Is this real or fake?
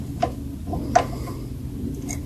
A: real